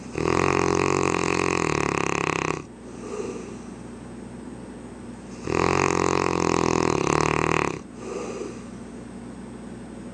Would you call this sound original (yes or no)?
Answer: yes